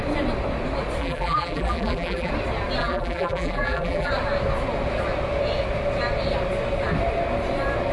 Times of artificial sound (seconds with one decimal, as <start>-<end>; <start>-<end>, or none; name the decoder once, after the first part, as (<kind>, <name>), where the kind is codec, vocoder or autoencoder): 1.0-2.3 (vocoder, BigVGAN v2); 2.8-4.1